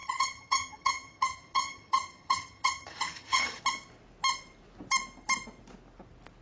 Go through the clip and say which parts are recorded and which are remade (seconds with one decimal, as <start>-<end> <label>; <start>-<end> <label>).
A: 0.0-3.6 remade; 3.6-6.4 recorded